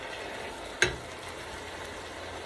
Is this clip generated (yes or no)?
no